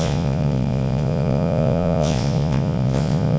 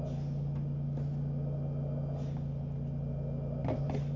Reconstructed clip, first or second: first